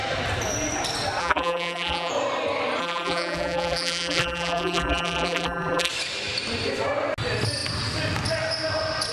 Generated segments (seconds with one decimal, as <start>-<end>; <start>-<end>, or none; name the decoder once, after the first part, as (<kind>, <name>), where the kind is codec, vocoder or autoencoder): 1.2-2.1 (vocoder, BigVGAN v2); 2.8-5.9